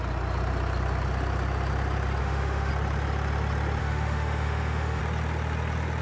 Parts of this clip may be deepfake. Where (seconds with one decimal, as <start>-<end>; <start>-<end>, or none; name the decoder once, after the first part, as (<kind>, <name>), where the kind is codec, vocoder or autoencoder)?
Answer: 2.2-2.7 (autoencoder, DAC-VAE); 3.8-5.0